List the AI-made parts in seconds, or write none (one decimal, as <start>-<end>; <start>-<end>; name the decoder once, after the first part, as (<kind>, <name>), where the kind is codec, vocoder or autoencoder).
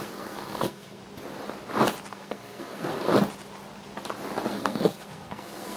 0.0-1.0 (codec, SNAC); 2.1-3.1; 4.5-5.8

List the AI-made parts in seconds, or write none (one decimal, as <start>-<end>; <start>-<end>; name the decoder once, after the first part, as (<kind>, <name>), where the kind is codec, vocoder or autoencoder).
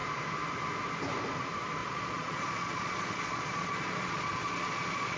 1.8-5.2 (vocoder, Vocos)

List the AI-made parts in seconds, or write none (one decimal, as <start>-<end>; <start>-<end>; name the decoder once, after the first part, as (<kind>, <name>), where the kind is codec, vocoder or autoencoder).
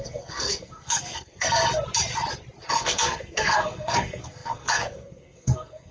0.0-1.6 (codec, SNAC); 2.7-5.9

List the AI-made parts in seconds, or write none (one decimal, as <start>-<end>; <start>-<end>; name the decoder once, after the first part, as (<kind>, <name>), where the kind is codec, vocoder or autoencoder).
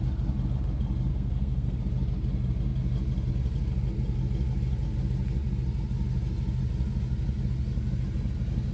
1.1-1.8 (codec, SNAC)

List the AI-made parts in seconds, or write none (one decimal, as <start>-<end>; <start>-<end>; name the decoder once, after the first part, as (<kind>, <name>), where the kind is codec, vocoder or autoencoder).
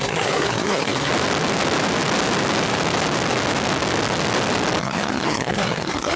0.0-1.1 (codec, SNAC); 4.8-6.2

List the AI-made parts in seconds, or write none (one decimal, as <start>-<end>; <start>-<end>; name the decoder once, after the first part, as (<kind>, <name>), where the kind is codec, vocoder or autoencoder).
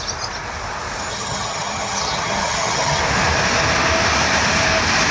1.1-3.0 (vocoder, HiFi-GAN)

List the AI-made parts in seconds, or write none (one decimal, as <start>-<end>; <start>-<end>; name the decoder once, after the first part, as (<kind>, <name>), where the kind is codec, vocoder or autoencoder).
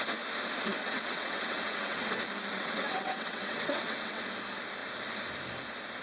0.8-2.1 (vocoder, WaveNeXt); 2.5-4.2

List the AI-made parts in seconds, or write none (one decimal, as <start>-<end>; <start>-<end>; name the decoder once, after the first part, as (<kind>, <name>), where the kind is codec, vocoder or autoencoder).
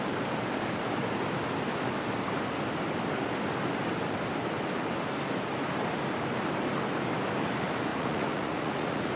7.9-9.2 (vocoder, Vocos)